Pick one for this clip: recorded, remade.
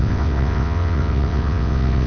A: remade